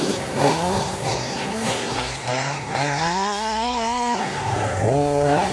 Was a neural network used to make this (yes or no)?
yes